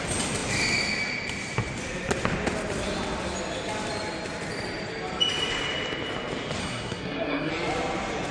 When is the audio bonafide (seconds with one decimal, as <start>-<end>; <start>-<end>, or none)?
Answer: 0.0-6.6; 7.5-8.3

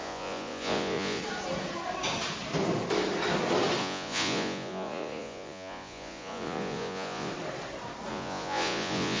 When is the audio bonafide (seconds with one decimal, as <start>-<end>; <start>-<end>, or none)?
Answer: 1.2-3.8; 7.3-8.1